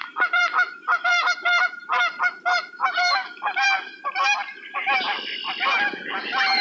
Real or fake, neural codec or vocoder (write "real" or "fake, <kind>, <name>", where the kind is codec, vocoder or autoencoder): fake, vocoder, BigVGAN v2